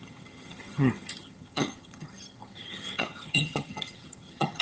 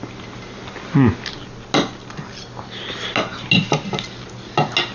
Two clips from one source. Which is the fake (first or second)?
first